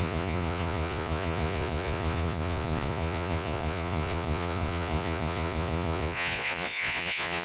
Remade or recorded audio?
remade